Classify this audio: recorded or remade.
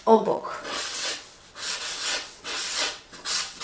remade